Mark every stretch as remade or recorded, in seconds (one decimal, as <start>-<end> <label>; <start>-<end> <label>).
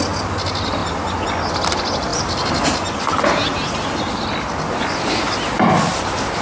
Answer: 0.0-6.4 recorded